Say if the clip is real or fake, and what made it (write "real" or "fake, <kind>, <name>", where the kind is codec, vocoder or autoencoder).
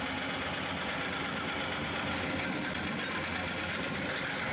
real